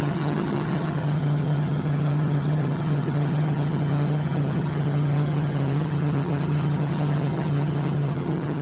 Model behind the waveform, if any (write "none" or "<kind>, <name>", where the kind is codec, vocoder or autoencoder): vocoder, HiFi-GAN